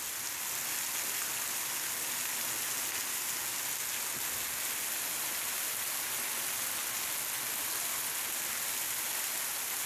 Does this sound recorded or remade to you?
recorded